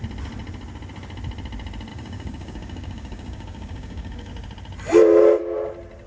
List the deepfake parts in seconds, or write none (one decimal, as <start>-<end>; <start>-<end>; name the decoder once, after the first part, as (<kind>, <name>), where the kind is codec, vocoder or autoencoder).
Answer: 1.9-4.3 (codec, DAC)